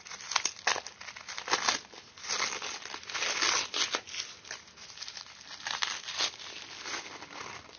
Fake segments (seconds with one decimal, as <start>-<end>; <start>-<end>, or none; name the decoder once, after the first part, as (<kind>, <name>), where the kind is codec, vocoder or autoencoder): none